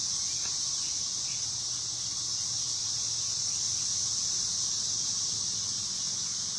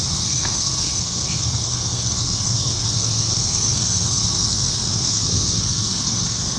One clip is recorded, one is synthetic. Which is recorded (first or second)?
first